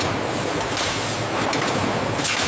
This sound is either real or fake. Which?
real